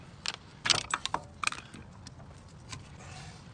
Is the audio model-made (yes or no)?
no